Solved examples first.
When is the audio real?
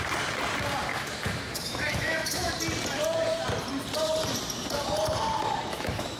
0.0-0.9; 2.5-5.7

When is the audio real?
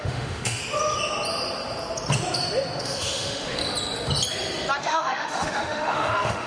0.6-2.8; 3.6-4.8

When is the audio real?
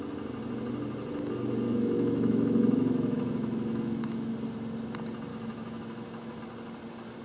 0.0-1.7; 4.3-5.3; 6.4-7.2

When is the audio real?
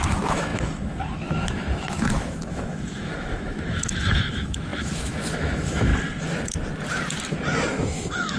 5.9-7.7